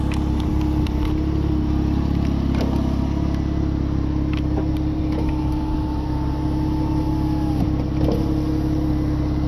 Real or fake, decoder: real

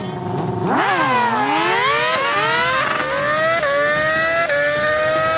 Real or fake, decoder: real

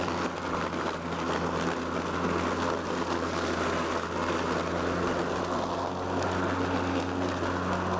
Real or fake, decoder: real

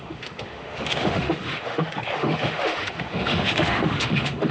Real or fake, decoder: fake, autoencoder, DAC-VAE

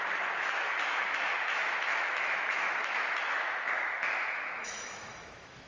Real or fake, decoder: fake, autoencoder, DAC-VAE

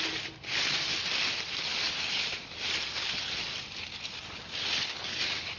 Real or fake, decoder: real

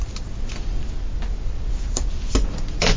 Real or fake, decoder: real